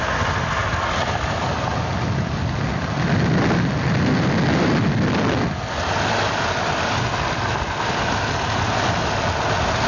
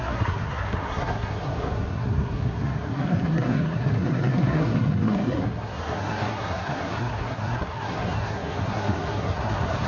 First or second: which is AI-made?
second